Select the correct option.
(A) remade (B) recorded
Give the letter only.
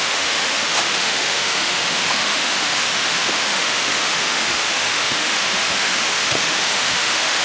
A